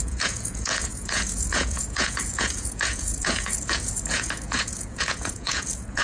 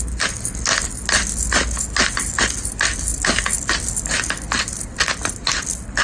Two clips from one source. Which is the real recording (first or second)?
second